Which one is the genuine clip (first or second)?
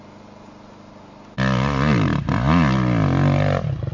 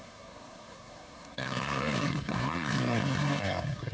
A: first